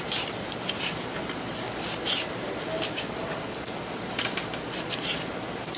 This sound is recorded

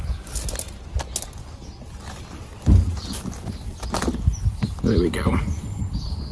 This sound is recorded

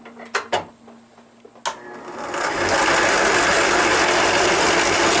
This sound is recorded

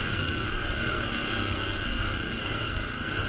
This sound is remade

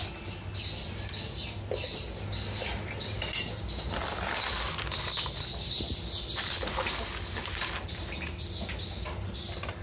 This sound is recorded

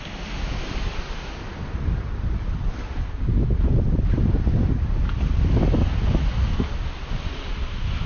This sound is recorded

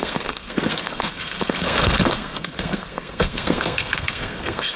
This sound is remade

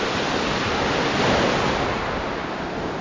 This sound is recorded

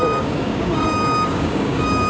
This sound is remade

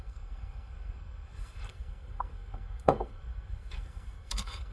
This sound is remade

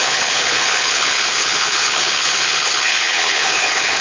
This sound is remade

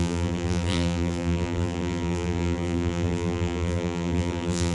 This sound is remade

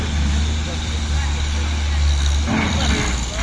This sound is recorded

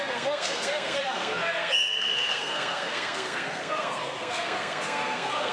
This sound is remade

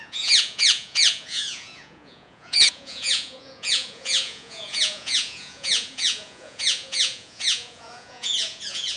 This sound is remade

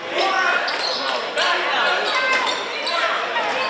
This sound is recorded